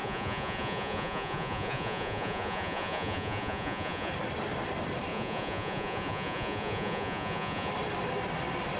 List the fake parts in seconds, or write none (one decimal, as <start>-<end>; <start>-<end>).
0.0-4.1; 5.1-7.7